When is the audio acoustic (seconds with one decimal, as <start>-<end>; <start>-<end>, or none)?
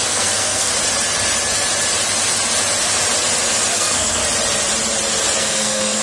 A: 0.7-3.7; 4.2-5.4